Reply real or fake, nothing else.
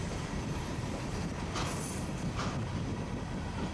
fake